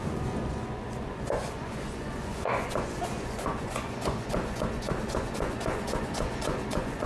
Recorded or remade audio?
remade